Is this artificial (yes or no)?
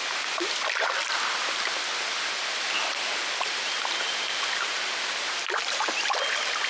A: no